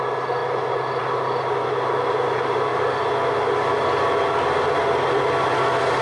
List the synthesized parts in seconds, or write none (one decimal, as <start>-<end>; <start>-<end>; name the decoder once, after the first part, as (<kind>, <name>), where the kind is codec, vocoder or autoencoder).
none